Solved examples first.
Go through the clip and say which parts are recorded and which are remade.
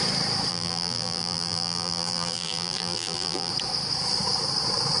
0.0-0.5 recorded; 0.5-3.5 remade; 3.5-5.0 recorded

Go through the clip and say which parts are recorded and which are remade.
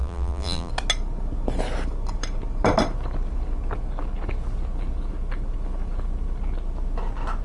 0.0-0.7 remade; 0.7-7.4 recorded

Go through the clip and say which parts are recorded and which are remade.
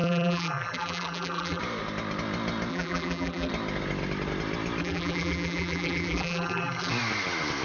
0.0-1.6 remade; 1.6-2.7 recorded; 2.7-3.5 remade; 3.5-4.8 recorded; 4.8-6.9 remade; 6.9-7.6 recorded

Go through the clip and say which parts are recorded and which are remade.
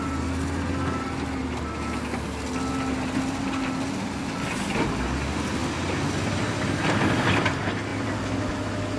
0.0-9.0 recorded